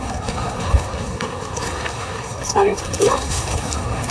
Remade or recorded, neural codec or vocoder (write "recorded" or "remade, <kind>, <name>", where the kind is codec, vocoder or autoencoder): remade, codec, SNAC